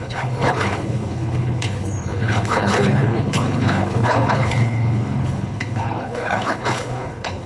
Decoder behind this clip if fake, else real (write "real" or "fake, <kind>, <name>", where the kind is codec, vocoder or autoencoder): fake, codec, HILCodec